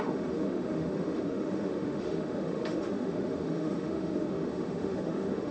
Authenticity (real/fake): fake